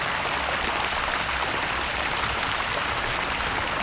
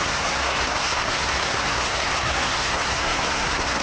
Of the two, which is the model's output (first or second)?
second